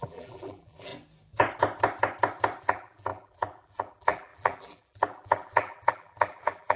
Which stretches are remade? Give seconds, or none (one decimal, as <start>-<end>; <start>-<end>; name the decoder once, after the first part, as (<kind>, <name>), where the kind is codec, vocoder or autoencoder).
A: 0.0-0.9 (vocoder, BigVGAN v2); 2.6-6.8